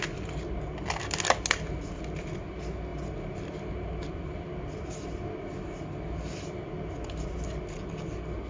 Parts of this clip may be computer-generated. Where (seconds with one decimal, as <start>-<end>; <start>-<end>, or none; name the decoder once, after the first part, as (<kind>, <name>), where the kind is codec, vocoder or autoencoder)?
none